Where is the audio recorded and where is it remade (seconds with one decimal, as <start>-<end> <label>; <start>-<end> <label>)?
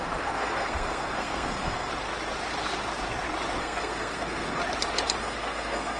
0.0-1.9 remade; 1.9-3.6 recorded; 3.6-4.6 remade; 4.6-5.2 recorded; 5.2-6.0 remade